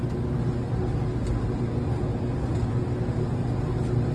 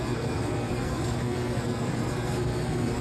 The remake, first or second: second